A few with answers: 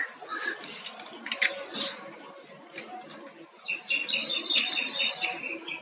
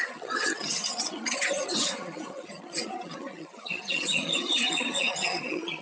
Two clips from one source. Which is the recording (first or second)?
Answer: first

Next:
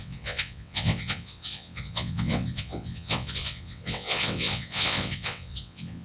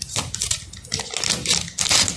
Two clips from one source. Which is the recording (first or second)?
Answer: second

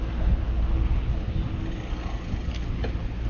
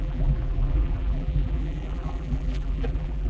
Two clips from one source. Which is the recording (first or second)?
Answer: first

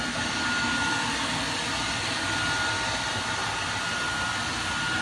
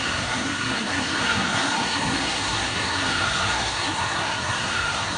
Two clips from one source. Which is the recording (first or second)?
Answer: first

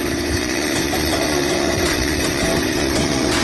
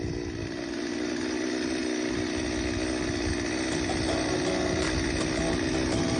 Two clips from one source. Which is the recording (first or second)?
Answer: second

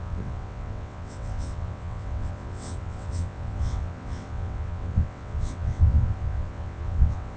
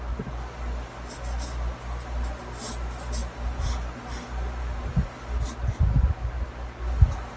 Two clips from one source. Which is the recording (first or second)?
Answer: second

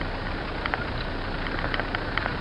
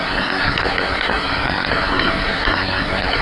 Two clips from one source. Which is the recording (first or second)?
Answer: first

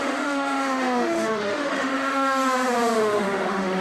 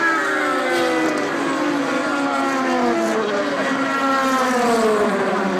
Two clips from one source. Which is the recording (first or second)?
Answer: second